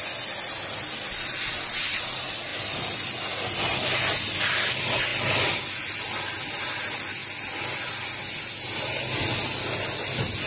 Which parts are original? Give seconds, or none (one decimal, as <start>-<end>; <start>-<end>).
0.0-10.5

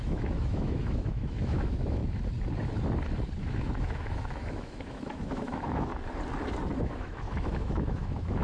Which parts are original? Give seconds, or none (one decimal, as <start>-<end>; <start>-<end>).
2.0-3.4; 5.9-6.8

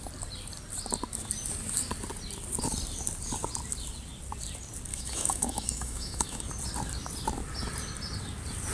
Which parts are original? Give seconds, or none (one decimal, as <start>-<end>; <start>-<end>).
0.0-4.9; 6.4-8.7

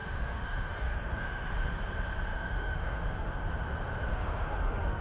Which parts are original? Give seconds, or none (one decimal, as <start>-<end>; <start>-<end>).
1.5-2.3; 3.4-4.1